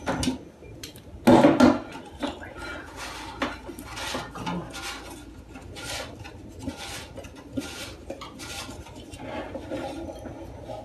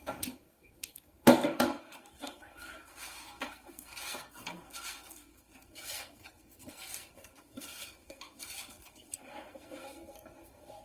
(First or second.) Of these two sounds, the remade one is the second